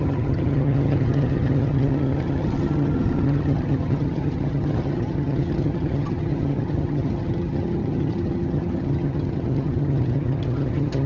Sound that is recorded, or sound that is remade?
remade